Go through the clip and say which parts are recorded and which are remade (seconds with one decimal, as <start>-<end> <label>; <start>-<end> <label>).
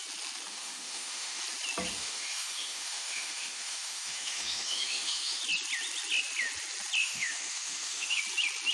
0.0-0.5 recorded; 0.5-1.4 remade; 1.4-2.0 recorded; 2.0-5.4 remade; 5.4-7.0 recorded; 7.0-8.2 remade; 8.2-8.7 recorded